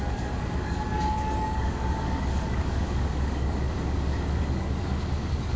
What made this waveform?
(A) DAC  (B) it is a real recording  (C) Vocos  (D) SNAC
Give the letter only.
A